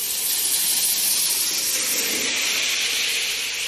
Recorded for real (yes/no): yes